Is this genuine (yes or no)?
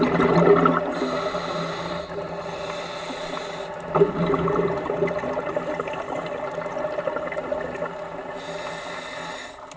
yes